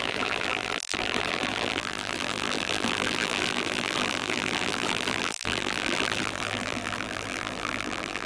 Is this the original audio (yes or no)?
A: no